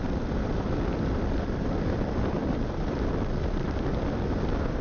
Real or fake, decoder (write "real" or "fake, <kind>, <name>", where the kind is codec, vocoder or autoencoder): fake, vocoder, BigVGAN v2